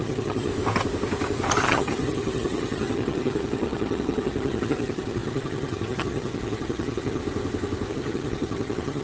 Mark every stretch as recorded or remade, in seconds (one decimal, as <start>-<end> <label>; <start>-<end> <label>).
0.0-0.5 remade; 0.5-1.6 recorded; 1.6-7.2 remade; 7.2-7.9 recorded; 7.9-9.0 remade

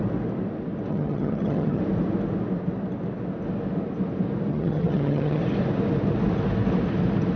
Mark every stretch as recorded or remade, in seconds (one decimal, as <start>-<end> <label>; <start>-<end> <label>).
0.0-0.9 recorded; 0.9-1.8 remade; 1.8-4.5 recorded; 4.5-5.4 remade; 5.4-7.4 recorded

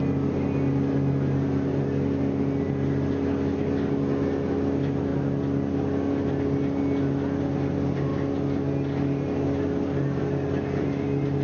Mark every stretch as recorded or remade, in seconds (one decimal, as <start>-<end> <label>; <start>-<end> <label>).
0.0-11.4 recorded

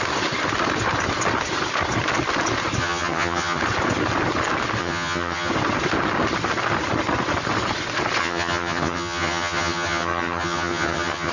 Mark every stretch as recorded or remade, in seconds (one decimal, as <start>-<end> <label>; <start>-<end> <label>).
0.0-2.8 recorded; 2.8-3.6 remade; 3.6-4.8 recorded; 4.8-5.5 remade; 5.5-8.2 recorded; 8.2-11.3 remade

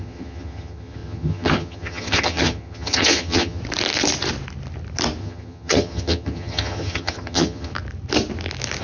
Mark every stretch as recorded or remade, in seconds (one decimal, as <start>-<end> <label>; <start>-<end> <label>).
0.0-3.6 remade; 3.6-5.2 recorded; 5.2-7.7 remade; 7.7-8.8 recorded